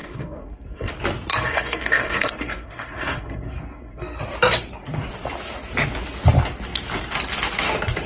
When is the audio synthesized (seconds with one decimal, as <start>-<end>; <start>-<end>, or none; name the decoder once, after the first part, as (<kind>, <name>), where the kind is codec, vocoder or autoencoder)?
0.0-0.9 (codec, SNAC); 1.3-4.2